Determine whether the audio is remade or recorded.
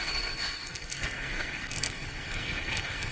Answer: remade